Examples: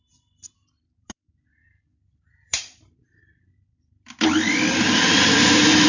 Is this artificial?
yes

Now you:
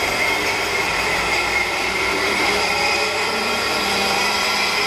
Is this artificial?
yes